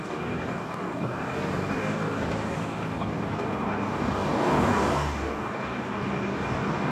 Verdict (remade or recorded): remade